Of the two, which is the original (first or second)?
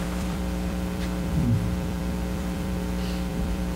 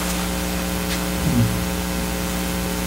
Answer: second